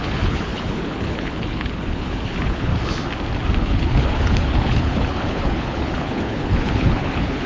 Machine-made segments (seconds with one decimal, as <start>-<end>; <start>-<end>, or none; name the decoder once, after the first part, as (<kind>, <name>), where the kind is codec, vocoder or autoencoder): 0.0-2.7 (codec, HILCodec); 3.6-7.5